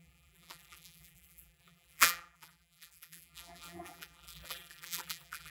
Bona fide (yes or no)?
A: no